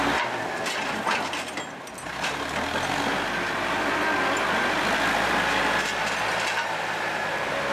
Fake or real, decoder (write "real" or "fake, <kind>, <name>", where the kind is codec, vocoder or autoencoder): real